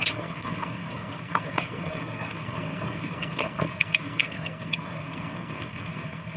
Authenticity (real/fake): fake